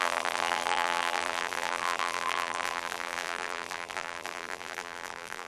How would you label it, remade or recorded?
remade